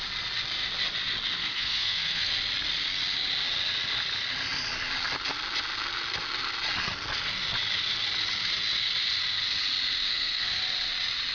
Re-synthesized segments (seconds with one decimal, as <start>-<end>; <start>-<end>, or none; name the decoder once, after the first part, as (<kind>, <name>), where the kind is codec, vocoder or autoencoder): 1.4-2.3 (codec, SNAC); 10.1-10.6